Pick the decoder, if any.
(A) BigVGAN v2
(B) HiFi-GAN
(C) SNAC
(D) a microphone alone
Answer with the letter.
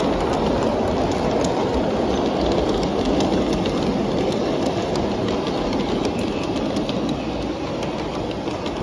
D